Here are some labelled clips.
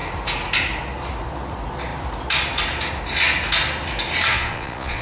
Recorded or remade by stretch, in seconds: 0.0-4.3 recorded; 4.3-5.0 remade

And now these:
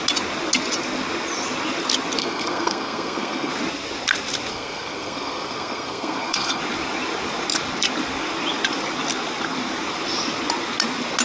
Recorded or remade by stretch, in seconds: 0.0-2.2 recorded; 2.2-3.5 remade; 3.5-4.5 recorded; 4.5-6.6 remade; 6.6-11.2 recorded